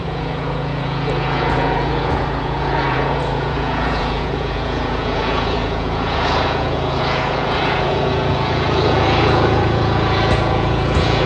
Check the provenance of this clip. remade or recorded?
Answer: remade